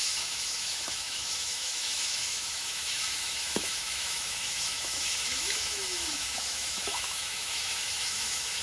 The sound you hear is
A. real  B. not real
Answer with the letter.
B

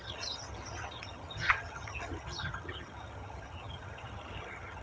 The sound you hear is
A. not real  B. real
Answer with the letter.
A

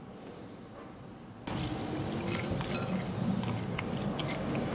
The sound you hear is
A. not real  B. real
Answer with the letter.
B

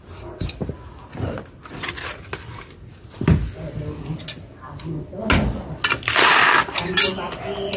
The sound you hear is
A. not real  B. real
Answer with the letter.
B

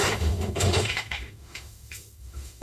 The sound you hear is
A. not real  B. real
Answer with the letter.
A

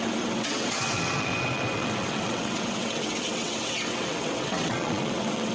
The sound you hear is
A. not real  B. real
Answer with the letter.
A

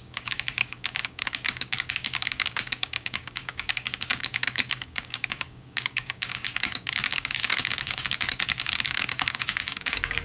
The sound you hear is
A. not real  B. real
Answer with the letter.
A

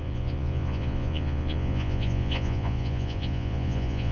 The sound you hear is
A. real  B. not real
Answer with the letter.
B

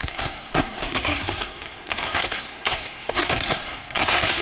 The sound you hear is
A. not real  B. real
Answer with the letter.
A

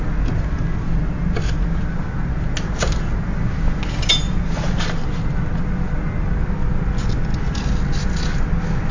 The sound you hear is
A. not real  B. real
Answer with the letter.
B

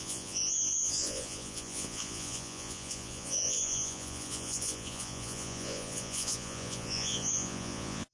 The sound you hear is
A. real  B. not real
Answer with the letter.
B